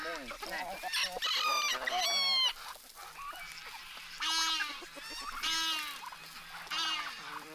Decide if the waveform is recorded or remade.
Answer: recorded